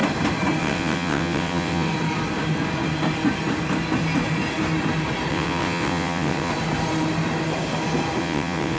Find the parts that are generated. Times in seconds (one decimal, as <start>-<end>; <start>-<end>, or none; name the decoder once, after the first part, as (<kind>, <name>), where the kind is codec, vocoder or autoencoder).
0.6-1.9 (vocoder, WaveNeXt); 5.3-6.5; 8.2-8.8